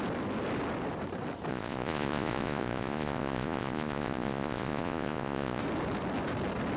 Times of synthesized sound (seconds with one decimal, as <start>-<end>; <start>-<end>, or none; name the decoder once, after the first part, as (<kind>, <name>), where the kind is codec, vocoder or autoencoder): 1.5-5.6 (vocoder, Vocos)